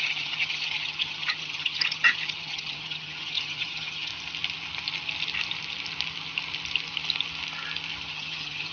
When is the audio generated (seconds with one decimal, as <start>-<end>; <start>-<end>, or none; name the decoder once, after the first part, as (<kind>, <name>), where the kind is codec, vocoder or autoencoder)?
0.0-4.1 (vocoder, HiFi-GAN); 8.1-8.7